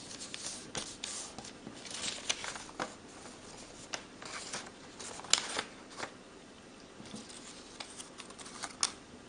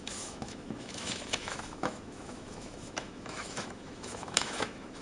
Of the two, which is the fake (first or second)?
second